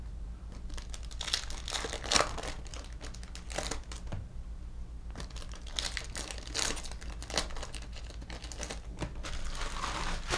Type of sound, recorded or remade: recorded